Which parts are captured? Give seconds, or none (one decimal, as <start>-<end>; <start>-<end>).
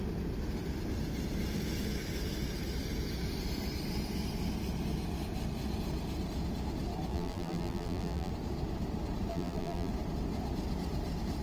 0.0-7.1; 8.3-9.3; 9.9-11.4